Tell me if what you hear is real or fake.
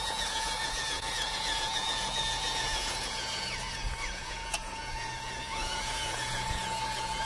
fake